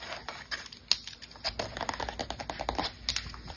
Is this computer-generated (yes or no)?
no